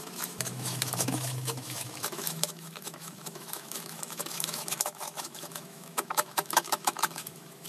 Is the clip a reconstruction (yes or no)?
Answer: yes